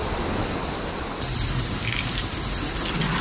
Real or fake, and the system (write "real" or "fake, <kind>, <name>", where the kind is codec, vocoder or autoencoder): real